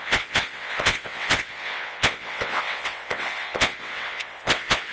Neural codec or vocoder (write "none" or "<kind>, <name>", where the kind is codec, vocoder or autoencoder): vocoder, WaveNeXt